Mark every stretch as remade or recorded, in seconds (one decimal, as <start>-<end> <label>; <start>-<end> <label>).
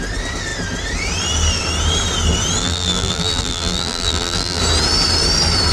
0.0-2.6 recorded; 2.6-4.6 remade; 4.6-5.7 recorded